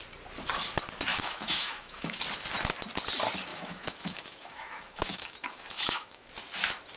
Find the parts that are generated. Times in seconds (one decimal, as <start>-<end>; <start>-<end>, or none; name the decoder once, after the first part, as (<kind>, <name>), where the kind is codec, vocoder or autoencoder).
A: 1.1-2.2 (autoencoder, DAC-VAE); 3.5-6.3

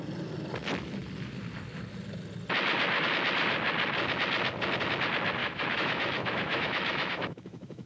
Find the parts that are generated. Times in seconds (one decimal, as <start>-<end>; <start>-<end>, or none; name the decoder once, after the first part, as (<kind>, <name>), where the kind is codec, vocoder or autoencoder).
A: 5.4-7.9 (autoencoder, DAC-VAE)

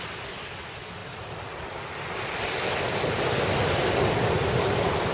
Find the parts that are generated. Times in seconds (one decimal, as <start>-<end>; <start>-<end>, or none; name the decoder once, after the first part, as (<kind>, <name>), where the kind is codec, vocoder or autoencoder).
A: none

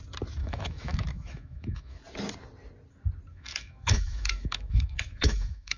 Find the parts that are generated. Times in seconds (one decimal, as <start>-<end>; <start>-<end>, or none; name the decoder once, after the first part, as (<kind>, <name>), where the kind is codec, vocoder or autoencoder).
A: 0.4-2.0 (autoencoder, DAC-VAE); 3.3-5.8

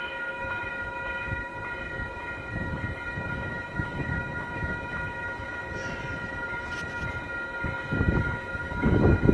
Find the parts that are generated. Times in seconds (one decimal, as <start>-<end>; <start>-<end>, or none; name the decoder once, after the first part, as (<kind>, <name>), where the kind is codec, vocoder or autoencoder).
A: 0.0-1.5 (autoencoder, DAC-VAE); 3.3-5.8; 8.2-9.3

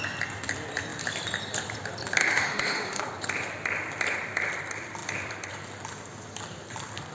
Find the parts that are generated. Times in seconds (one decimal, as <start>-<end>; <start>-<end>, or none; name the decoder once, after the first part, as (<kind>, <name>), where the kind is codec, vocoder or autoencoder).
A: 2.2-3.0 (autoencoder, DAC-VAE)